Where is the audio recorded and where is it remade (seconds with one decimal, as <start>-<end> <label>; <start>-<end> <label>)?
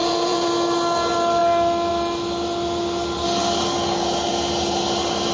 0.0-0.5 remade; 0.5-5.3 recorded